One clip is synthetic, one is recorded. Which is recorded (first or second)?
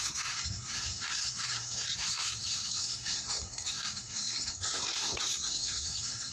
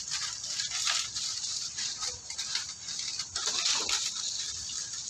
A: second